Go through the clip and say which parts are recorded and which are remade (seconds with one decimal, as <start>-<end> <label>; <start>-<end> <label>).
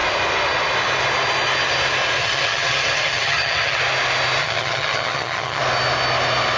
0.0-2.2 recorded; 2.2-3.8 remade; 3.8-4.4 recorded; 4.4-5.6 remade; 5.6-6.6 recorded